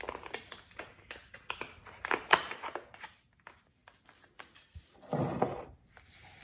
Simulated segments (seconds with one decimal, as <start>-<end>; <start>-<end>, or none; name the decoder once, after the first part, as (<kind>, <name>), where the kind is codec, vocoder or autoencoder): none